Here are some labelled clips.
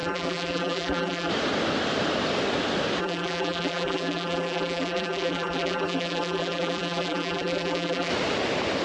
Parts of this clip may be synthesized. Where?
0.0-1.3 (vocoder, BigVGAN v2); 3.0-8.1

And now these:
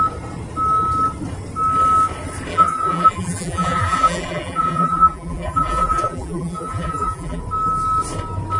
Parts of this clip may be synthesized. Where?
2.5-7.4 (vocoder, BigVGAN v2)

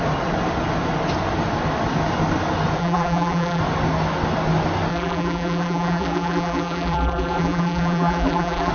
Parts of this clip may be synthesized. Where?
2.8-3.6 (vocoder, BigVGAN v2); 4.9-8.7